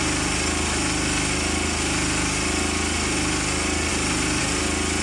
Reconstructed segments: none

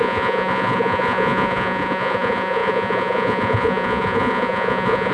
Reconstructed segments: 0.0-5.1 (vocoder, Vocos)